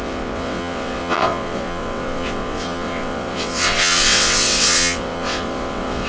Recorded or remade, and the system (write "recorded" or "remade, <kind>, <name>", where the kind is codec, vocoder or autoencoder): remade, vocoder, WaveNeXt